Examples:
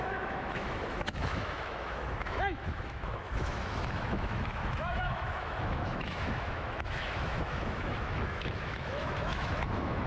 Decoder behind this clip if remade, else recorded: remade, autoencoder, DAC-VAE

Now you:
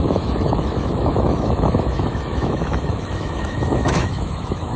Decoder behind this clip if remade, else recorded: remade, autoencoder, DAC-VAE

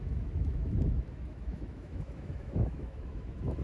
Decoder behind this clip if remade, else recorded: remade, autoencoder, DAC-VAE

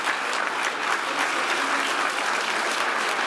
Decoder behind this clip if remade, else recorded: recorded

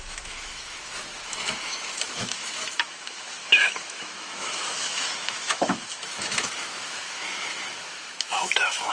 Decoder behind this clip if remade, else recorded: remade, autoencoder, DAC-VAE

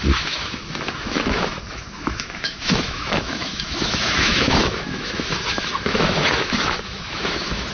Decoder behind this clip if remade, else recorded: remade, autoencoder, DAC-VAE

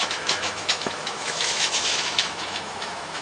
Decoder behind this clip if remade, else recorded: remade, autoencoder, DAC-VAE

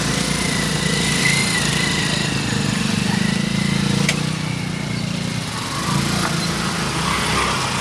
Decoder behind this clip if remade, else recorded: recorded